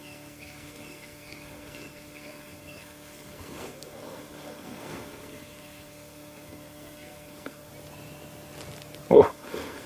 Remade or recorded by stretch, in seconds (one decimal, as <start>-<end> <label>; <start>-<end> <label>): 0.0-7.7 remade; 7.7-9.2 recorded; 9.2-9.9 remade